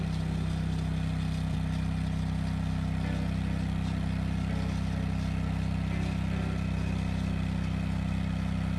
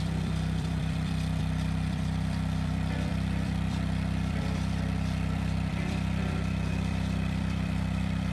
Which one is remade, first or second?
second